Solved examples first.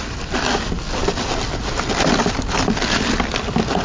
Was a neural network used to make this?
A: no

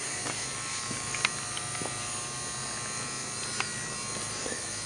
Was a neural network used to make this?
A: no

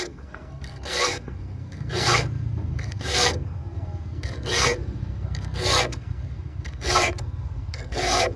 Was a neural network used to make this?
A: yes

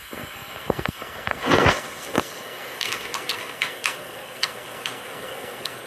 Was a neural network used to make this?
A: yes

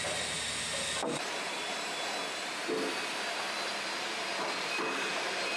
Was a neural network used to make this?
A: no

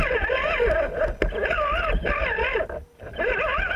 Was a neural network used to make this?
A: no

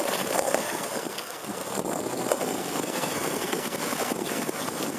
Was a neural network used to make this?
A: yes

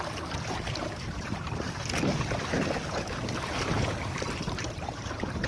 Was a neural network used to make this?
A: no